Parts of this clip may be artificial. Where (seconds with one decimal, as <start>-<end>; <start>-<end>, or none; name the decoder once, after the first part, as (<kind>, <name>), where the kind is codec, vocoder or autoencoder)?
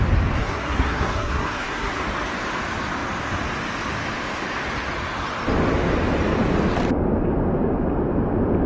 0.4-2.0 (codec, SNAC)